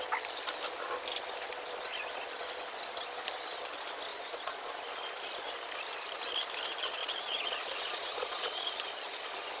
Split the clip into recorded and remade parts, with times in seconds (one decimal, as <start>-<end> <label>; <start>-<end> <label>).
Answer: 0.0-4.1 recorded; 4.1-4.7 remade; 4.7-7.0 recorded; 7.0-8.7 remade; 8.7-9.6 recorded

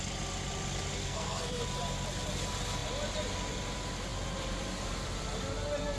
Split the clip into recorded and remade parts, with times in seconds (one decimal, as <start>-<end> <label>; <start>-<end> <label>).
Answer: 0.0-1.0 recorded; 1.0-1.6 remade; 1.6-6.0 recorded

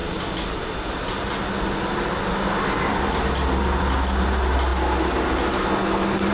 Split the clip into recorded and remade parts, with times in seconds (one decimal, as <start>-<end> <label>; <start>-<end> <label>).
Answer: 0.0-6.3 recorded

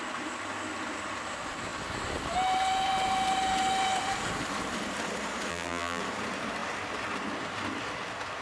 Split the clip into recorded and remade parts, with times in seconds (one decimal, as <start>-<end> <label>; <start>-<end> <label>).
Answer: 0.0-5.5 recorded; 5.5-6.0 remade; 6.0-8.4 recorded

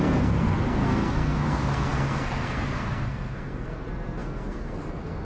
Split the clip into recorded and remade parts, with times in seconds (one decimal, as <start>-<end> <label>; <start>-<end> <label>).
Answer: 0.0-5.2 remade